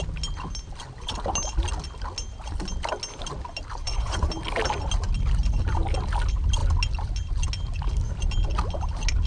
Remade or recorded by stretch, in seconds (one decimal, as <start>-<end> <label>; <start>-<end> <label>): 0.0-3.8 recorded; 3.8-4.3 remade; 4.3-9.3 recorded